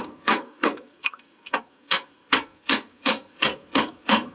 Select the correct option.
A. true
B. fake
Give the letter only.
B